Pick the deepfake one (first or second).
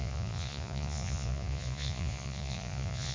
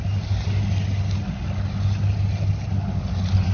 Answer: first